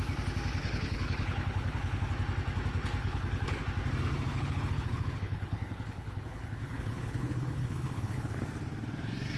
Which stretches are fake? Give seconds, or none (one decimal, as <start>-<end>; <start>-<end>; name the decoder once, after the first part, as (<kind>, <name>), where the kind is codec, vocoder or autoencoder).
0.6-2.1 (codec, HILCodec); 3.0-3.6; 4.3-8.4